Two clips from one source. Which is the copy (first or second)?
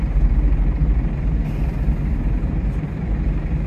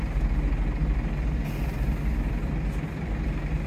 first